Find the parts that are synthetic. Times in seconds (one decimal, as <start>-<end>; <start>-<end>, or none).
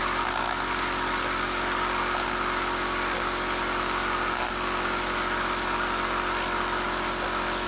none